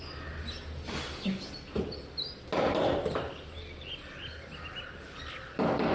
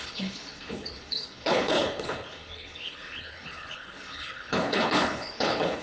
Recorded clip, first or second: first